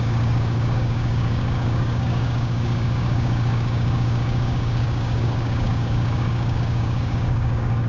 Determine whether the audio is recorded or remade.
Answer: remade